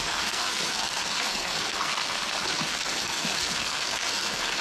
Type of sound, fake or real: fake